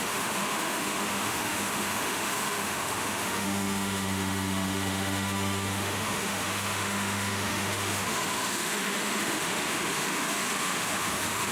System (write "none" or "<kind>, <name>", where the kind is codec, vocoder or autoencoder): autoencoder, DAC-VAE